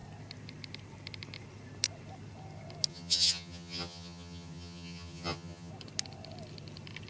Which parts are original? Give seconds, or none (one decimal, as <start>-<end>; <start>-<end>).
0.0-2.9; 5.7-7.1